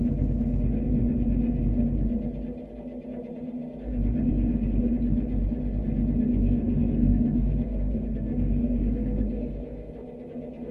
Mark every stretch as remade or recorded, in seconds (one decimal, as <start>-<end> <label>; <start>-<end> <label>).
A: 0.0-6.4 recorded; 6.4-9.9 remade; 9.9-10.7 recorded